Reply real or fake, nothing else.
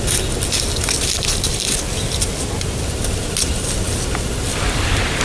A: real